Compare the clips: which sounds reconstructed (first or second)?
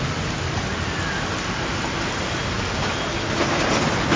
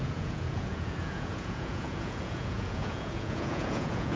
second